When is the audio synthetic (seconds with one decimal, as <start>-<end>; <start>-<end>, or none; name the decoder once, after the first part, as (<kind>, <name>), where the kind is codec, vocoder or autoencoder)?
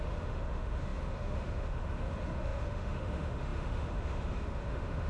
0.0-5.1 (autoencoder, DAC-VAE)